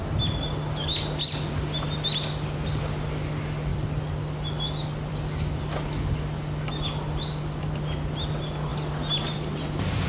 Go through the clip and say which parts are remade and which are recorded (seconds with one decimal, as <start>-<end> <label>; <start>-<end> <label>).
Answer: 0.0-10.1 recorded